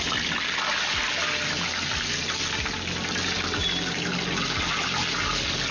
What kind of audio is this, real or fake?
real